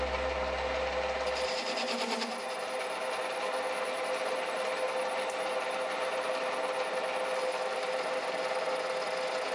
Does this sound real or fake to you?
real